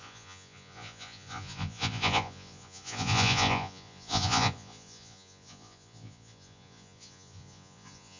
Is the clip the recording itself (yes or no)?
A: no